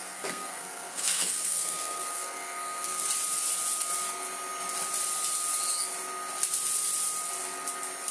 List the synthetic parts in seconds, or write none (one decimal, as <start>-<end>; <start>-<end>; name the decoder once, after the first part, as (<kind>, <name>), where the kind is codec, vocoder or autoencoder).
0.0-3.0 (codec, SNAC)

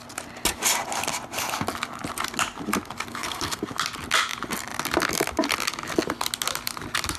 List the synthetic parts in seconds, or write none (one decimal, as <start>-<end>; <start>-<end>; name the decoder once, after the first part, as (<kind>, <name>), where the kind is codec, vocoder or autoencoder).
3.1-3.6 (codec, SNAC)

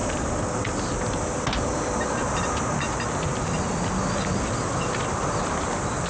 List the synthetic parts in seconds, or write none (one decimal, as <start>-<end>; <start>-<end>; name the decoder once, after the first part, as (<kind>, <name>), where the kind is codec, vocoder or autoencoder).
none

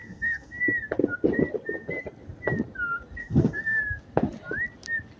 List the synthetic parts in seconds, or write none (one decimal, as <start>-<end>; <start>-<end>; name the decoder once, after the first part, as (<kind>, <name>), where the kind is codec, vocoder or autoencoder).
0.0-0.6 (codec, SNAC); 3.2-3.8

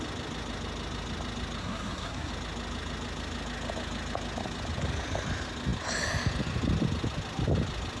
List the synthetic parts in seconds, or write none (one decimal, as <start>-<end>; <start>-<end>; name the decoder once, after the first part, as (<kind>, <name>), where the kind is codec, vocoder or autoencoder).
1.6-2.3 (codec, SNAC)

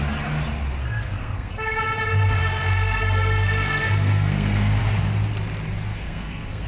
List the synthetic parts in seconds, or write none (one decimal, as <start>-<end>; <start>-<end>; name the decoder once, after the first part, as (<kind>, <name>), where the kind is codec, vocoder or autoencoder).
0.8-1.8 (codec, SNAC); 2.4-4.8; 5.9-6.7